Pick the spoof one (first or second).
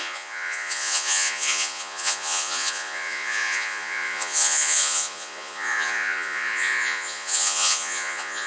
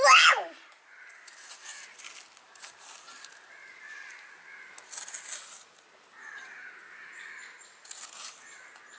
first